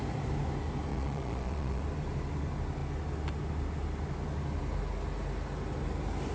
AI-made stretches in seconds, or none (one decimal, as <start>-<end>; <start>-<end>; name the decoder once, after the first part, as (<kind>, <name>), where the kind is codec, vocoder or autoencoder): 0.9-1.8 (vocoder, Vocos)